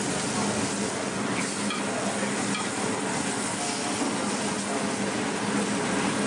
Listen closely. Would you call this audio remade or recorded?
recorded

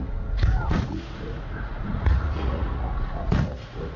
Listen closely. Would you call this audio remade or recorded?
remade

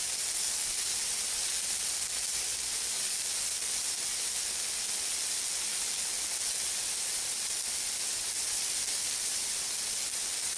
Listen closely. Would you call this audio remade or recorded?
recorded